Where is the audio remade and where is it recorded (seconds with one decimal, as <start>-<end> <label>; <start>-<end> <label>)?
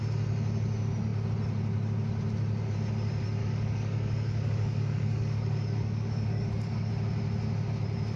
0.0-3.4 recorded; 3.4-6.9 remade; 6.9-8.2 recorded